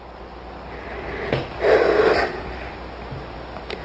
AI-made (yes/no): no